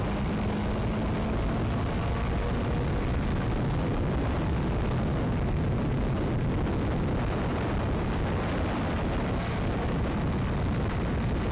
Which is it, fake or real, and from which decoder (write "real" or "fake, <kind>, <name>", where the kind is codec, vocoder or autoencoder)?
real